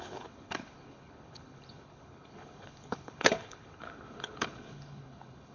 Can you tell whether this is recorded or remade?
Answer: remade